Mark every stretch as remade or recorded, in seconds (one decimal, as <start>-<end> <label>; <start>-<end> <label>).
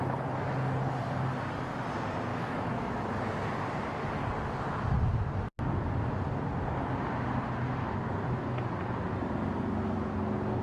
0.0-2.3 recorded; 2.3-3.1 remade; 3.1-10.6 recorded